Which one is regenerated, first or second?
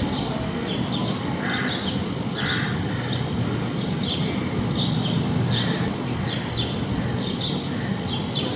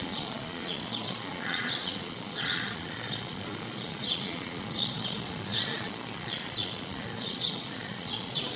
second